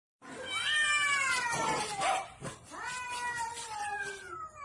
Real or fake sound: real